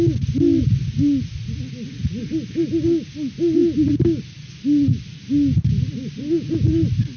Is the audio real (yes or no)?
yes